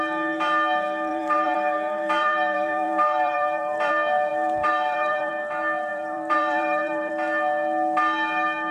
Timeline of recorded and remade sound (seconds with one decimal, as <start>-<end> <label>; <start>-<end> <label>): 0.0-1.1 recorded; 1.1-3.9 remade; 3.9-4.3 recorded; 4.3-5.3 remade; 5.3-5.9 recorded; 5.9-7.1 remade; 7.1-8.7 recorded